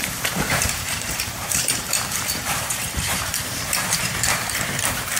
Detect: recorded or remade remade